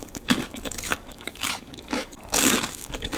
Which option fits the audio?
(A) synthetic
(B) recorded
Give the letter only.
A